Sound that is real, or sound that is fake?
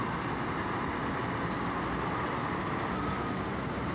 real